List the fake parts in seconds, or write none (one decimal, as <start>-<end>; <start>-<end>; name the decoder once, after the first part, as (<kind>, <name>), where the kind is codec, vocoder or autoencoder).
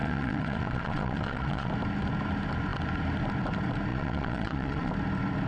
0.0-1.7 (vocoder, Vocos); 3.9-4.9